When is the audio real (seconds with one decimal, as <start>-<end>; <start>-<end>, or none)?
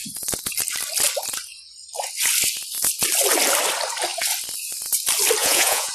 0.0-5.4